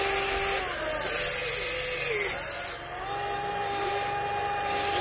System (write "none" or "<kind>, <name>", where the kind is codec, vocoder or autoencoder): none